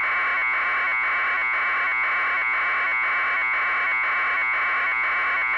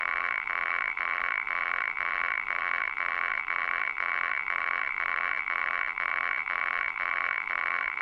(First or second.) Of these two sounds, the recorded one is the first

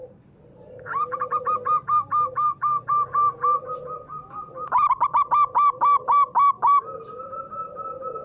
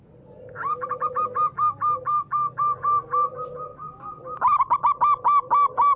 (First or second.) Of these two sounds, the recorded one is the second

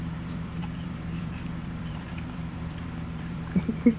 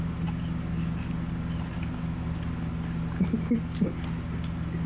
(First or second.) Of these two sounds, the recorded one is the second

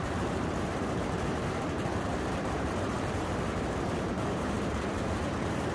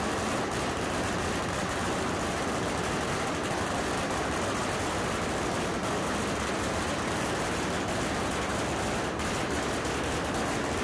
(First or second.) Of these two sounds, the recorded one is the second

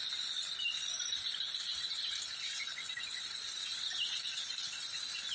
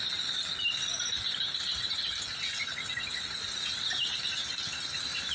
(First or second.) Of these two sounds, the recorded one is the second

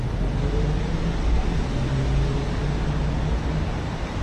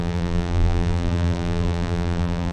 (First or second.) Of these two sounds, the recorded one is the first